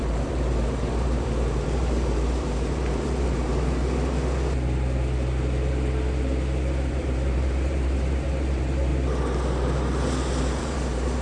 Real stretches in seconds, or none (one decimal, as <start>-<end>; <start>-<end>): 3.8-6.9; 8.9-10.4

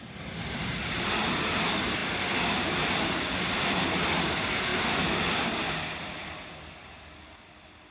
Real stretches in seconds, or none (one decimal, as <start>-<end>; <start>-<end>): 0.0-7.9

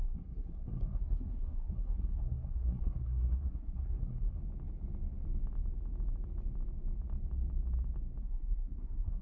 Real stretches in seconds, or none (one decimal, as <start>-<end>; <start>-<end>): 4.4-8.2

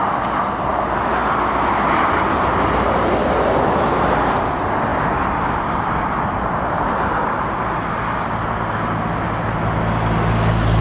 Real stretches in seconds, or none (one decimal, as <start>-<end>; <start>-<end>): 0.0-10.8